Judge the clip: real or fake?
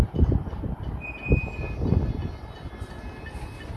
real